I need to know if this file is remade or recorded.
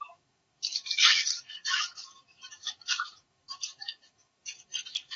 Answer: remade